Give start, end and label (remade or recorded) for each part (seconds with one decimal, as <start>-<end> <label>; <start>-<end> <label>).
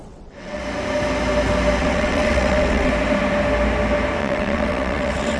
0.0-0.6 remade; 0.6-1.8 recorded; 1.8-2.9 remade; 2.9-4.2 recorded; 4.2-5.4 remade